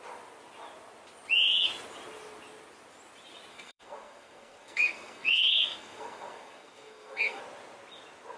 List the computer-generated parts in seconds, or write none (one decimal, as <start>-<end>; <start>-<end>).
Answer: 3.5-7.4